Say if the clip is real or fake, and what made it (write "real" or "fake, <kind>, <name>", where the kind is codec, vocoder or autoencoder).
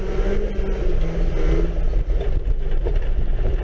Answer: real